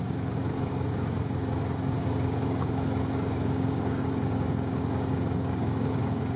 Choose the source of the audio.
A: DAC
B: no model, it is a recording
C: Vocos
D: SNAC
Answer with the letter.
A